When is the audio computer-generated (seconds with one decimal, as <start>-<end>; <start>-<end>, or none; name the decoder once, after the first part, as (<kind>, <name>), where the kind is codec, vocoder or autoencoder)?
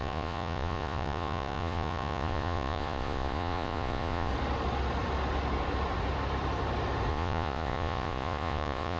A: 0.0-4.3 (vocoder, Vocos); 7.1-9.0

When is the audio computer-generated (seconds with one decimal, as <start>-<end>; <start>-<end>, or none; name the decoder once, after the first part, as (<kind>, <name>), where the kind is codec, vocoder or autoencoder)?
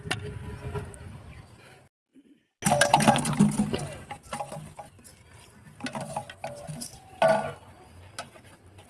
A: none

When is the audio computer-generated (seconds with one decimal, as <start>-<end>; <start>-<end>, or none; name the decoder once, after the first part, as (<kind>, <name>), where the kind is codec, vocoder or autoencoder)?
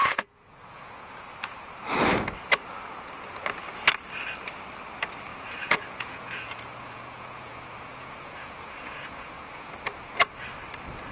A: 0.0-1.3 (vocoder, Vocos); 5.3-9.7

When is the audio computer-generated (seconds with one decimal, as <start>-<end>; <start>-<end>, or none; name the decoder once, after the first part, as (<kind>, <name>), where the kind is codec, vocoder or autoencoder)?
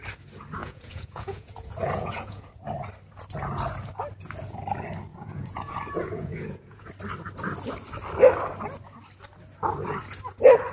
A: 0.6-2.5 (vocoder, Vocos); 5.1-6.9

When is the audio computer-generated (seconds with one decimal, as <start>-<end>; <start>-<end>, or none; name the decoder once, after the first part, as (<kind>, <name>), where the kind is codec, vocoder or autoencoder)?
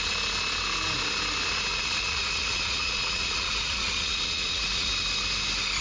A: 1.7-4.9 (vocoder, Vocos)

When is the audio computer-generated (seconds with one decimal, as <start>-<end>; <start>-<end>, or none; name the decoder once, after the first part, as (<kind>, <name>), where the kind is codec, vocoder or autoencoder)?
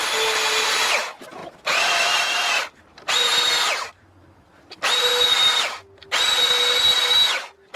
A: none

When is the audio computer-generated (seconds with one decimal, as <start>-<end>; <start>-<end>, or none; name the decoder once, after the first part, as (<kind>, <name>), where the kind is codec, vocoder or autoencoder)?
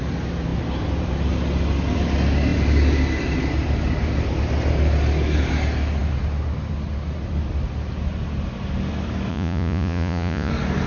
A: 9.3-10.5 (vocoder, Vocos)